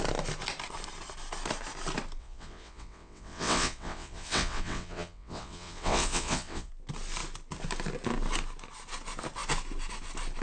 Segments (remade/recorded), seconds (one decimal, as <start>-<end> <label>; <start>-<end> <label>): 0.0-2.2 recorded; 2.2-6.7 remade; 6.7-10.4 recorded

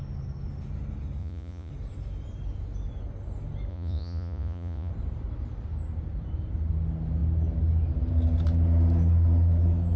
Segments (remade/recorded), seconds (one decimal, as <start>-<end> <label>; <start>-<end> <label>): 0.0-1.2 recorded; 1.2-1.7 remade; 1.7-3.7 recorded; 3.7-4.9 remade; 4.9-10.0 recorded

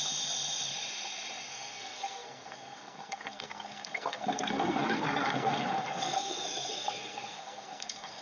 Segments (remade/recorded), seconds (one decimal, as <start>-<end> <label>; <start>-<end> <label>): 0.0-1.5 recorded; 1.5-8.2 remade

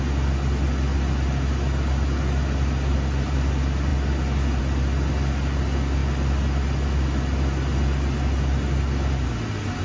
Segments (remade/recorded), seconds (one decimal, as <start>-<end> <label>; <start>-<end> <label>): 0.0-9.8 recorded

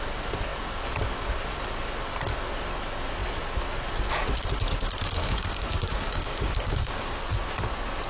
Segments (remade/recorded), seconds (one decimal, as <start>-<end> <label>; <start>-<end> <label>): 0.0-5.2 recorded; 5.2-7.2 remade; 7.2-8.1 recorded

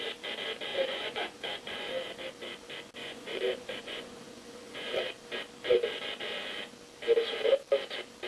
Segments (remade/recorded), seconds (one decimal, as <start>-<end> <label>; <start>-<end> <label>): 0.0-0.7 recorded; 0.7-1.9 remade; 1.9-3.0 recorded; 3.0-5.0 remade; 5.0-8.3 recorded

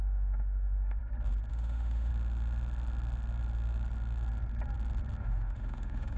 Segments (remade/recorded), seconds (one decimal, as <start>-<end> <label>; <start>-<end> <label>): 0.0-1.0 remade; 1.0-1.5 recorded; 1.5-2.1 remade; 2.1-5.2 recorded; 5.2-6.2 remade

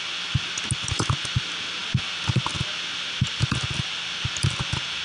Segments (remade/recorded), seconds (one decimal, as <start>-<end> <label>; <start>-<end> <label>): 0.0-5.0 recorded